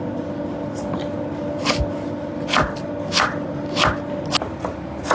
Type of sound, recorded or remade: recorded